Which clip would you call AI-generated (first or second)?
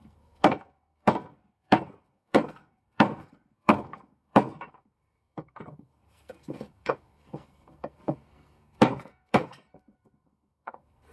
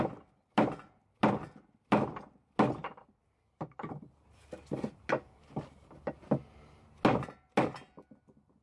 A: first